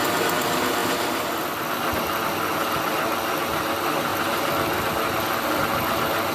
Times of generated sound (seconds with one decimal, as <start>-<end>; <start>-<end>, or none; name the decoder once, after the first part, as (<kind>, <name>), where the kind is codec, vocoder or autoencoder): none